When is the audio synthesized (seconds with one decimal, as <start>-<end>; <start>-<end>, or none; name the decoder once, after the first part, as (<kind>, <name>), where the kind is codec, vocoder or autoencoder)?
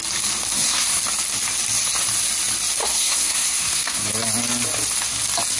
0.5-1.0 (codec, SNAC); 2.8-4.1